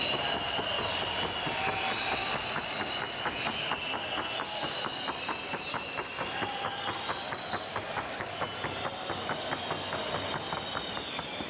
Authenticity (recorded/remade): recorded